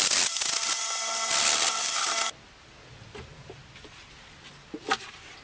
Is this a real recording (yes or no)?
yes